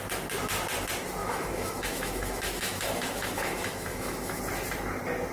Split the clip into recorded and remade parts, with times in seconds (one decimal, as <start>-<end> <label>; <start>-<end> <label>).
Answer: 0.0-1.2 recorded; 1.2-4.4 remade; 4.4-5.3 recorded